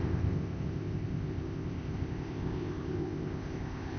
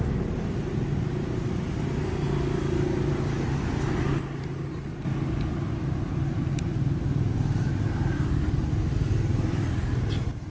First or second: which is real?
second